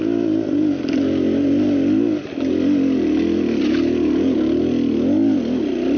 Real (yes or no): yes